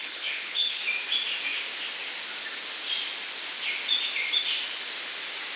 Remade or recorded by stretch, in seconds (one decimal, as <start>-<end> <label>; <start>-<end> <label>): 0.0-0.8 remade; 0.8-5.6 recorded